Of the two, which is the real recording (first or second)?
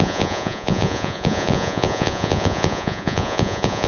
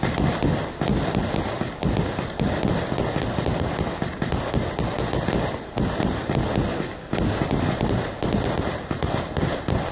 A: second